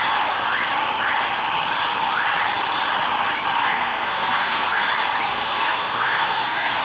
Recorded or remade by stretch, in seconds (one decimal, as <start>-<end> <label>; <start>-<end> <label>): 0.0-3.6 recorded; 3.6-4.8 remade; 4.8-5.3 recorded; 5.3-6.8 remade